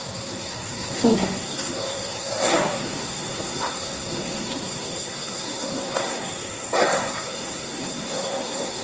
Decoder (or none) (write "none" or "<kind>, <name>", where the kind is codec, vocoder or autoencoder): codec, SNAC